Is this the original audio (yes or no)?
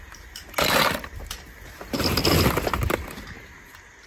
yes